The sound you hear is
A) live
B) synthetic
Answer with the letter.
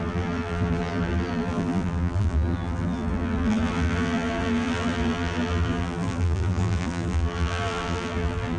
B